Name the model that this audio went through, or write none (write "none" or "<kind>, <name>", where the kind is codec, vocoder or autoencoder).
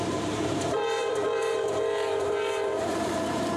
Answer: vocoder, BigVGAN v2